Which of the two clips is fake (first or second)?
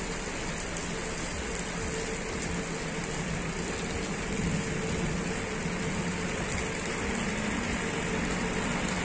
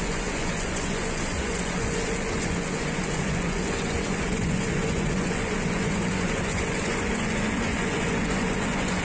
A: second